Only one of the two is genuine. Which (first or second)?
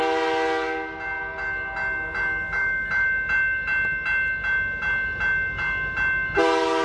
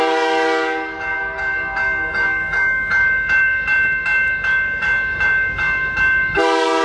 first